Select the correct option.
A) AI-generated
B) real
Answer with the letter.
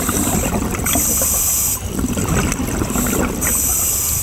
B